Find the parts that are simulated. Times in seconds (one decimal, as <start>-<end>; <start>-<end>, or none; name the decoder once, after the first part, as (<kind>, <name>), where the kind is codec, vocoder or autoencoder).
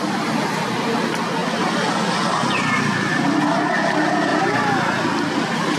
none